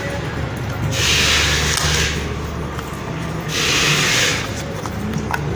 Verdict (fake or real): real